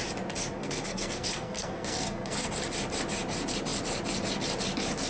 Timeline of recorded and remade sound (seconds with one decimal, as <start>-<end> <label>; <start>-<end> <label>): 0.0-0.5 recorded; 0.5-2.5 remade; 2.5-5.1 recorded